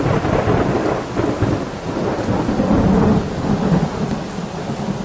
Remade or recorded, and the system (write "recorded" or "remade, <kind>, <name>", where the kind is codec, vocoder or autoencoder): recorded